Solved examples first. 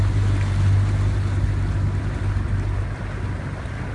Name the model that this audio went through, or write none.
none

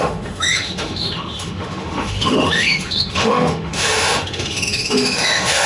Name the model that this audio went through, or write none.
autoencoder, DAC-VAE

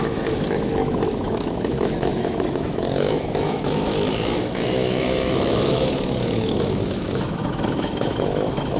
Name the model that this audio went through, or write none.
autoencoder, DAC-VAE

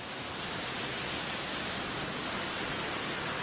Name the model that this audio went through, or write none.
none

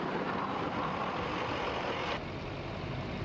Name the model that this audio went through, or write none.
none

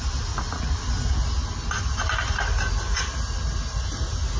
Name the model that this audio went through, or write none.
none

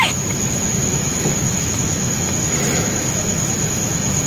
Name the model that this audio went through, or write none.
autoencoder, DAC-VAE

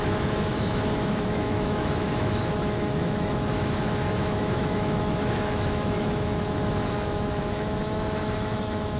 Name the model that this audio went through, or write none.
autoencoder, DAC-VAE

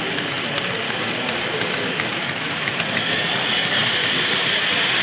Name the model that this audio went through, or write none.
none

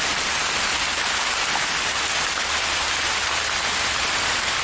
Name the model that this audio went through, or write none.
none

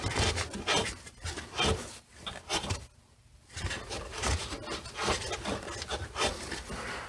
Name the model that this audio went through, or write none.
none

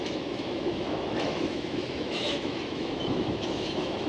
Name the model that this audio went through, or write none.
autoencoder, DAC-VAE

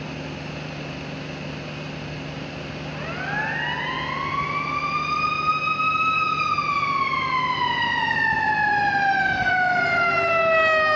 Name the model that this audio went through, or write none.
none